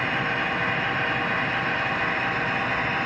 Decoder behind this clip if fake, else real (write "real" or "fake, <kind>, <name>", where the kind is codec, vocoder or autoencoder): real